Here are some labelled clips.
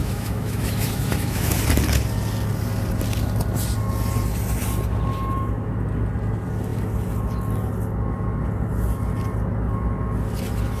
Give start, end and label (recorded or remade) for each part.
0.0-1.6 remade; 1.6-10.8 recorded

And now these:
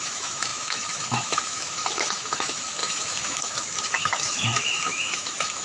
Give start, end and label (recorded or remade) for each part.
0.0-5.6 remade

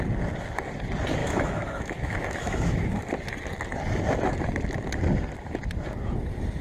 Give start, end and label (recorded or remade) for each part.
0.0-1.2 recorded; 1.2-3.0 remade; 3.0-6.6 recorded

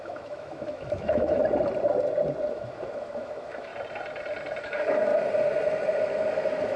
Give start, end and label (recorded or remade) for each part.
0.0-1.4 remade; 1.4-2.5 recorded; 2.5-3.7 remade; 3.7-4.6 recorded; 4.6-5.1 remade; 5.1-6.0 recorded; 6.0-6.8 remade

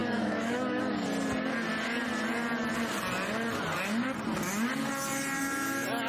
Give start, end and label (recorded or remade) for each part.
0.0-0.8 remade; 0.8-6.1 recorded